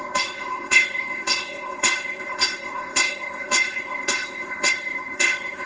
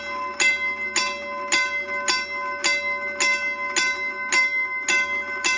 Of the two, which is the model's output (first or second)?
first